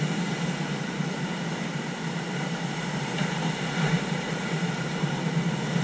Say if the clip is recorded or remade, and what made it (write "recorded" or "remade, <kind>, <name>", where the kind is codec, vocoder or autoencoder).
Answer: recorded